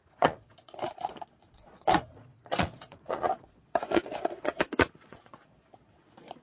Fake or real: fake